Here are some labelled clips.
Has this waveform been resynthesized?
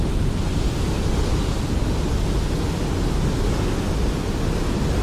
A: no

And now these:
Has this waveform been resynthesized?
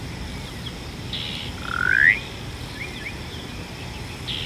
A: no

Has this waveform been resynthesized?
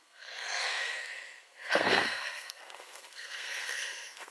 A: yes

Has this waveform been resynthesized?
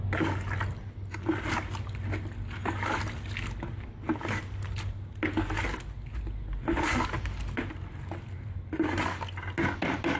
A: no